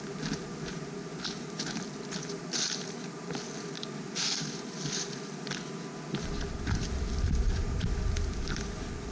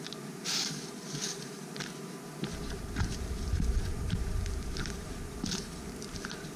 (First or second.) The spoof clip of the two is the second